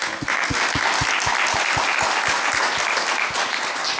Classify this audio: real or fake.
real